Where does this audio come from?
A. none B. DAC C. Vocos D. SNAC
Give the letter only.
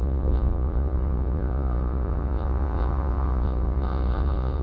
C